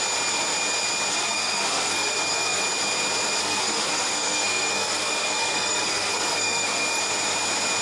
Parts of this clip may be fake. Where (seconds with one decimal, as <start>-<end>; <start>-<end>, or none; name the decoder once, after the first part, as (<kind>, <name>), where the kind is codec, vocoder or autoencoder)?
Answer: 1.1-2.6 (codec, SNAC); 3.4-7.0